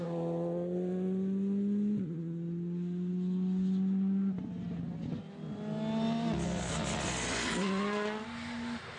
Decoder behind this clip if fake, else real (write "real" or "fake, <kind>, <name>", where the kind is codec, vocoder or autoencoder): real